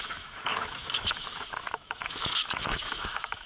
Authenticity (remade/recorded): remade